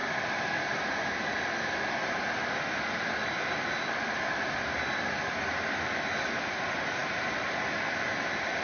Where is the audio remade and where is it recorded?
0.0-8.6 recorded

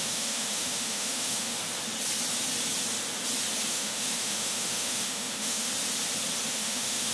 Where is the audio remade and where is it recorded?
0.0-1.6 remade; 1.6-3.7 recorded; 3.7-5.7 remade; 5.7-6.5 recorded; 6.5-7.1 remade

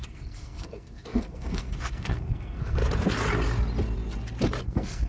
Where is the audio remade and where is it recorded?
0.0-2.8 remade; 2.8-4.6 recorded; 4.6-5.1 remade

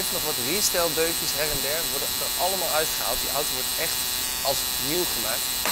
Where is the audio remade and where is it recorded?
0.0-5.7 remade